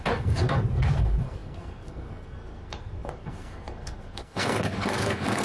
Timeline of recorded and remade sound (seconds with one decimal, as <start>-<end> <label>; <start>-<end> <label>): 0.0-5.4 remade